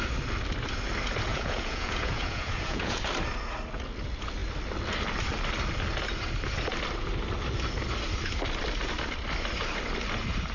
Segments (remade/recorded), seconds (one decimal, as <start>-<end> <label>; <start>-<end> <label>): 0.0-1.3 recorded; 1.3-3.0 remade; 3.0-10.5 recorded